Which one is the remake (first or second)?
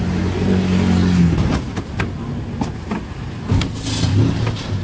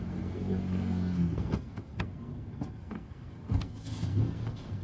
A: second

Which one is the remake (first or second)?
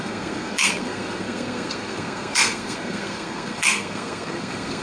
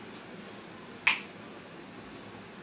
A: first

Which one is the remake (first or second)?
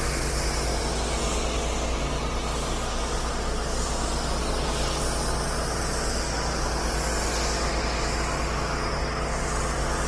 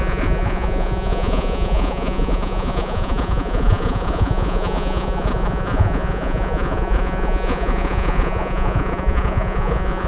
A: second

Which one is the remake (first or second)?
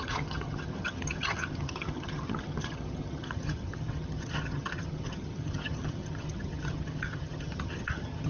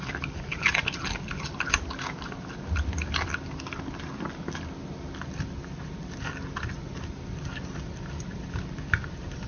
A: first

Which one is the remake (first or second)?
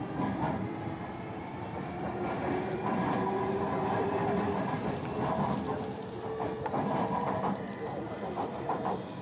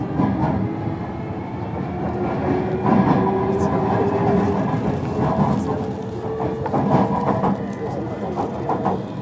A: first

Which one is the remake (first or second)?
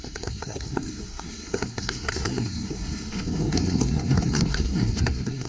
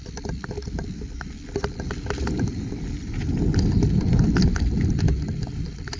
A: first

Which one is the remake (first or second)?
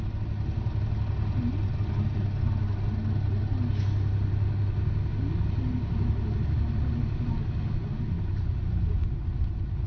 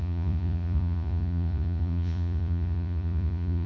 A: second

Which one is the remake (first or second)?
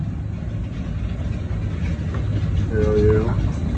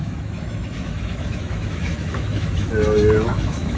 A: second